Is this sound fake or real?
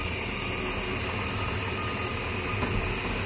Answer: real